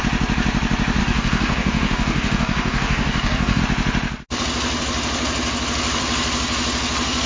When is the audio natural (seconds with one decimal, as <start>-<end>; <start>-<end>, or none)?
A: 0.0-1.0; 3.6-7.3